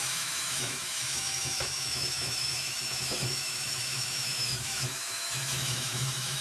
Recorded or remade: remade